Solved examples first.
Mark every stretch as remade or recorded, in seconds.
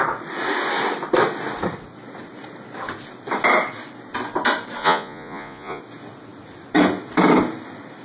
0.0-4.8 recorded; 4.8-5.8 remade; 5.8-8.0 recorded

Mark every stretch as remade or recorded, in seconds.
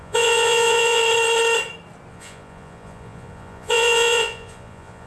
0.0-1.0 remade; 1.0-2.1 recorded; 2.1-5.1 remade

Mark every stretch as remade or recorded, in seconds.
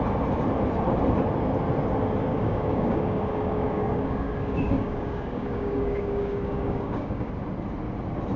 0.0-2.3 recorded; 2.3-7.3 remade; 7.3-8.4 recorded